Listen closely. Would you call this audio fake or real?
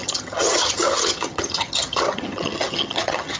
fake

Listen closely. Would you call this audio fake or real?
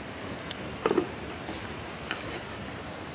real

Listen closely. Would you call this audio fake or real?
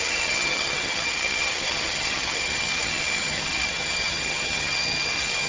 fake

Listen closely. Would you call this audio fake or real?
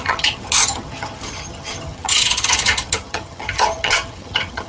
fake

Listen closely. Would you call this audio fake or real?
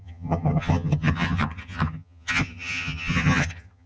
fake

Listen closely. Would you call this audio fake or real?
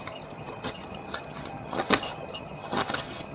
fake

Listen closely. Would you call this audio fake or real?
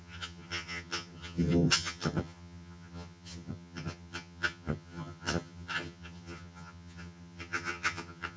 fake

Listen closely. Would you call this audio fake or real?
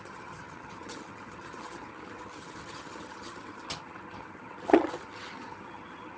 fake